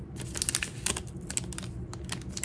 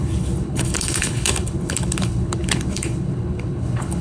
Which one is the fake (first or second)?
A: second